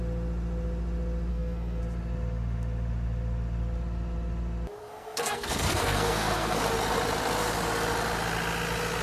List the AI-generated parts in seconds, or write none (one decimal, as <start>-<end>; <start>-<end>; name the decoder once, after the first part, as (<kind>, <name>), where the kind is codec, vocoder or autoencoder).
1.3-1.8 (codec, SNAC); 4.8-6.6

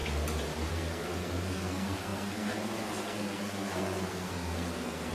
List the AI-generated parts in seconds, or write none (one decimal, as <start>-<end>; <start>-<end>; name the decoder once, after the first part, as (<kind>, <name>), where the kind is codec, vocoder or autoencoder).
0.7-5.1 (codec, SNAC)

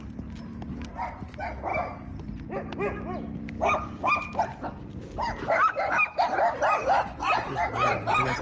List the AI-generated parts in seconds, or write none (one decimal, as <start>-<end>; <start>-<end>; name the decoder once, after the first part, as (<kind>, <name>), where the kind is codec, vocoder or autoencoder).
none

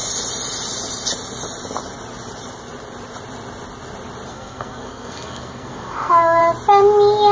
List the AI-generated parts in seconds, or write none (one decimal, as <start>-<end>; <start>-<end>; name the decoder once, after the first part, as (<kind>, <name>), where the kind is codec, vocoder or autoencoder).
4.3-6.4 (codec, SNAC)

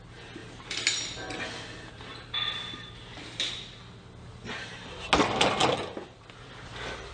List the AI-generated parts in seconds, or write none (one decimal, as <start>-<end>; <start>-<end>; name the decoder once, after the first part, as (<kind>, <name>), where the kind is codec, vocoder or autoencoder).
none